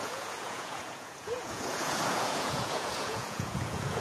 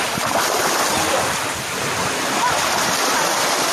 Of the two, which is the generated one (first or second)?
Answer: first